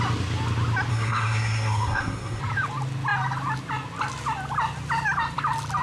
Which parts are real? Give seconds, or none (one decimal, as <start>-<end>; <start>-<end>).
0.0-0.9; 2.4-5.8